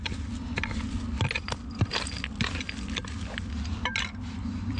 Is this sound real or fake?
real